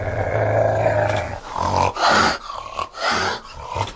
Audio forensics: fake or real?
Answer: real